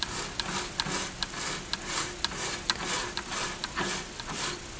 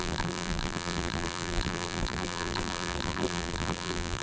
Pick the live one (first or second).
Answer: first